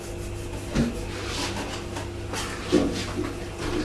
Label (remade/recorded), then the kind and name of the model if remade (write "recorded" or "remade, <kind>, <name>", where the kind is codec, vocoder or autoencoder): recorded